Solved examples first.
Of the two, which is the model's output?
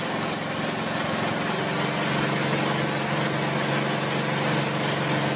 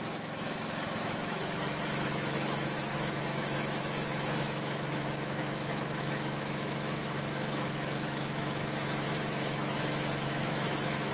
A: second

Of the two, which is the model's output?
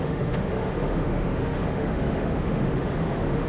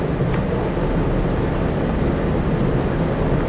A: first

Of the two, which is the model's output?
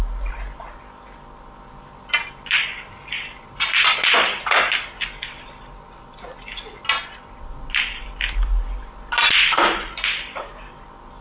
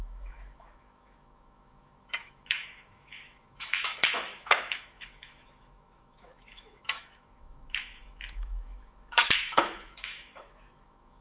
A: second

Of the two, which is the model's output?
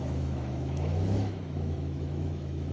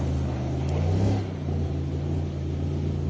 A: first